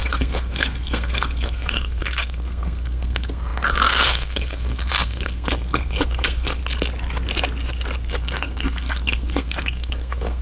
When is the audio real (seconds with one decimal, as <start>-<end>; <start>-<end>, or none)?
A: 6.6-8.1